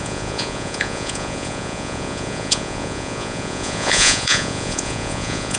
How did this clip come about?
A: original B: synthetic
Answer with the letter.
B